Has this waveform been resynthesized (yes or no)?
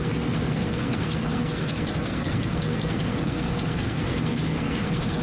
yes